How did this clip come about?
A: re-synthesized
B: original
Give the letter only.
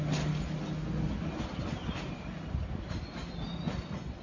B